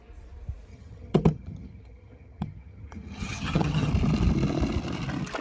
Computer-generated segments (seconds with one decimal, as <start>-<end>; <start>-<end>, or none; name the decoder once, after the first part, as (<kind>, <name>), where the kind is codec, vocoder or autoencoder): 0.7-3.9 (vocoder, HiFi-GAN)